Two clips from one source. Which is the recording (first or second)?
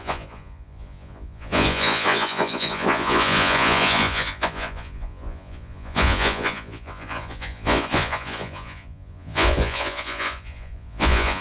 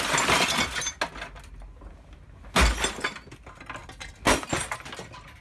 second